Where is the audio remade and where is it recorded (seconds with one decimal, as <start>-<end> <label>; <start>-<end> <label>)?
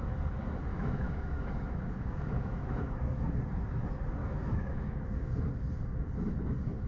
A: 0.0-0.7 recorded; 0.7-3.3 remade; 3.3-4.2 recorded; 4.2-5.4 remade; 5.4-6.9 recorded